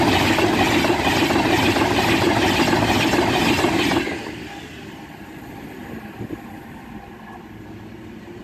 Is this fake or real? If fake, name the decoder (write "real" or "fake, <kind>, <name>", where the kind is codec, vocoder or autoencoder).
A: real